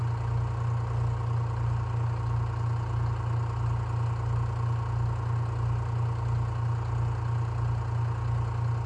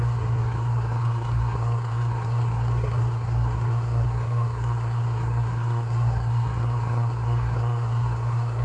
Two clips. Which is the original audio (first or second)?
first